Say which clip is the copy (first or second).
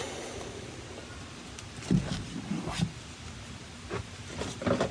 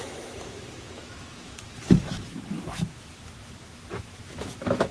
second